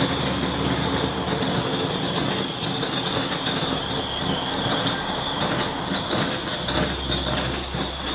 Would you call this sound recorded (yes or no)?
yes